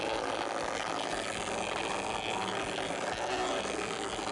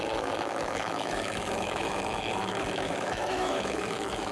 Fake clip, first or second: second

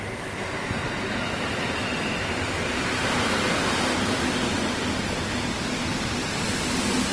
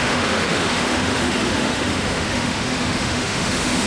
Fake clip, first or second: second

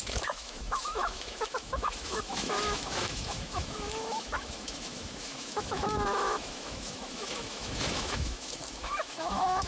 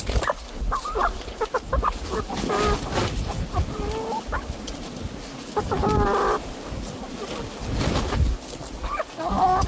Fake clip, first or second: first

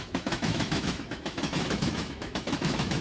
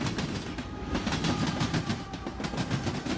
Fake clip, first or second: first